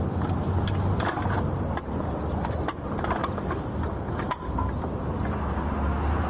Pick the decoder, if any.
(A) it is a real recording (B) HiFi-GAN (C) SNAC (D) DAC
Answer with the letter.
A